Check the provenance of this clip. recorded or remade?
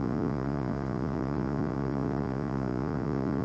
remade